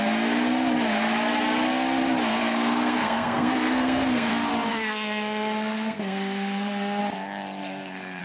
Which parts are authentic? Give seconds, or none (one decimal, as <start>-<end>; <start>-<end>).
0.0-2.4; 4.3-4.7; 7.0-7.6